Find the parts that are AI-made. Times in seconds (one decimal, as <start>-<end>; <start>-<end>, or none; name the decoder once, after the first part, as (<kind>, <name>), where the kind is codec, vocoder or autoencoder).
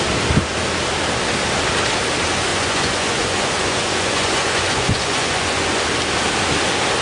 2.5-5.8 (vocoder, Vocos)